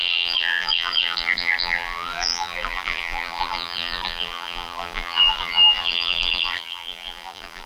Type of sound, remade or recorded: remade